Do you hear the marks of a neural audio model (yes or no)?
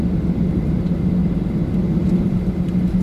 no